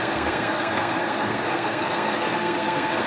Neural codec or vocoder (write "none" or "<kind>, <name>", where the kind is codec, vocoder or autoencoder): codec, SNAC